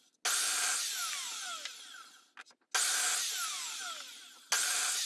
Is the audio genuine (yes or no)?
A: yes